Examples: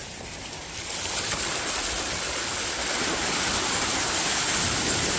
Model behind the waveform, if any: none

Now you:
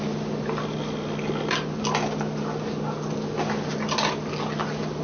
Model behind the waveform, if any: none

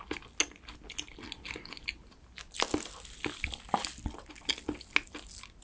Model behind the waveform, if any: none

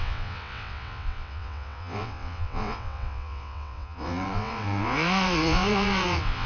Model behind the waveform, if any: vocoder, WaveNeXt